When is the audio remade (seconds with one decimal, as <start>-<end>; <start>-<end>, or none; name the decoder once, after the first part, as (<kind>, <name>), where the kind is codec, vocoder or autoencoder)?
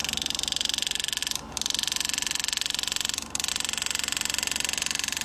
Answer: none